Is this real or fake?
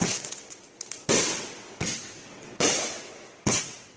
fake